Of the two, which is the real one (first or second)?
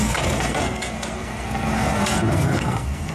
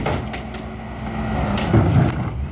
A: second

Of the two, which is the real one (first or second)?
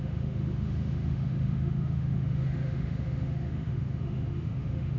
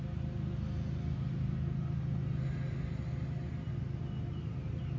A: second